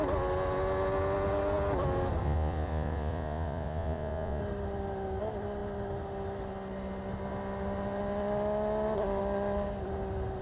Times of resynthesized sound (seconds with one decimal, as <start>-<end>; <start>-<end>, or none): 2.2-4.4